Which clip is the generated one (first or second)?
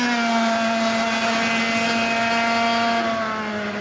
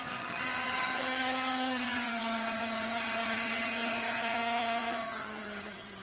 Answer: second